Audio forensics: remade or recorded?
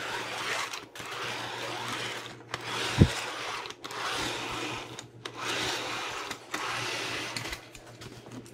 recorded